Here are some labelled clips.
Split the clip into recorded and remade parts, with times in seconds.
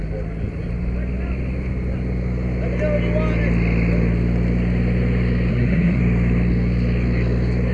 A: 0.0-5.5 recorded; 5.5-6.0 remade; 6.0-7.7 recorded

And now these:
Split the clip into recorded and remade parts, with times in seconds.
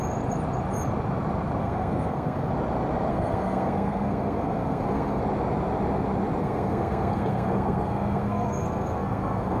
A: 0.0-1.6 recorded; 1.6-2.5 remade; 2.5-3.1 recorded; 3.1-5.2 remade; 5.2-6.4 recorded; 6.4-9.6 remade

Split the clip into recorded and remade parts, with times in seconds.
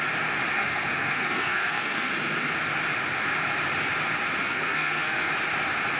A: 0.0-0.5 recorded; 0.5-2.1 remade; 2.1-4.4 recorded; 4.4-5.3 remade; 5.3-6.0 recorded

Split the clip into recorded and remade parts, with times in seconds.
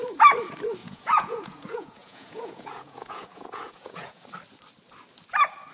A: 0.0-0.8 recorded; 0.8-4.2 remade; 4.2-5.7 recorded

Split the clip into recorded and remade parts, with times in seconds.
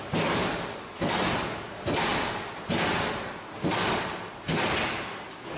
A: 0.0-5.6 recorded